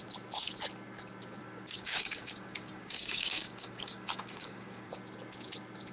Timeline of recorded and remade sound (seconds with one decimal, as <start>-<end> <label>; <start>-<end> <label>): 0.0-1.4 recorded; 1.4-4.9 remade; 4.9-5.9 recorded